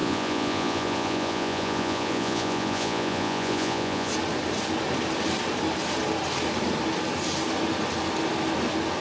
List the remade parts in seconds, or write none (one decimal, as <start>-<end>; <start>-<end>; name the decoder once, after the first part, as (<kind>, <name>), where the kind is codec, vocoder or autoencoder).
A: 0.0-4.1 (vocoder, Vocos)